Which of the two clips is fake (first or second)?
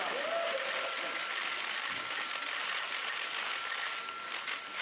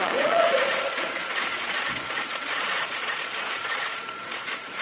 second